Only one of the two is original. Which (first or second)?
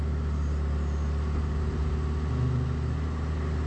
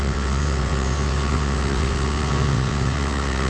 first